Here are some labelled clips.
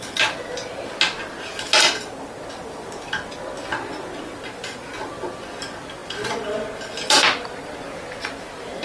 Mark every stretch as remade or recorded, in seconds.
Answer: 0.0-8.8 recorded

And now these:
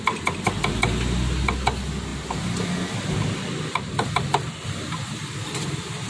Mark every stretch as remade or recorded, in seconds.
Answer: 0.0-6.1 recorded

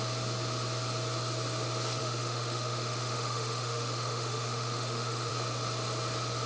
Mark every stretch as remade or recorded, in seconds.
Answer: 0.0-2.0 recorded; 2.0-5.3 remade; 5.3-6.5 recorded

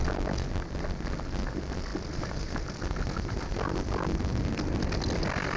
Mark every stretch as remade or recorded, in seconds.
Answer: 0.0-5.6 recorded

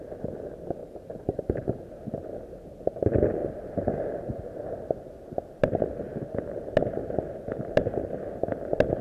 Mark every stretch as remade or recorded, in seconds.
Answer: 0.0-0.8 recorded; 0.8-1.8 remade; 1.8-3.4 recorded; 3.4-4.6 remade; 4.6-9.0 recorded

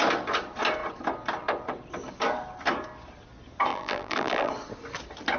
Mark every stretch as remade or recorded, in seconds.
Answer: 0.0-3.7 recorded; 3.7-4.5 remade; 4.5-5.4 recorded

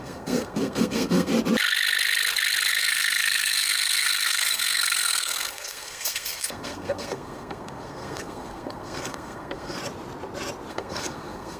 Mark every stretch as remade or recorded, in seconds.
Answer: 0.0-1.3 remade; 1.3-2.7 recorded; 2.7-9.8 remade; 9.8-10.7 recorded; 10.7-11.6 remade

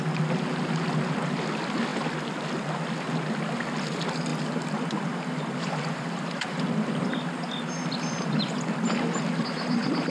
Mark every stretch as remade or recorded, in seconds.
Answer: 0.0-4.3 recorded; 4.3-9.2 remade; 9.2-10.1 recorded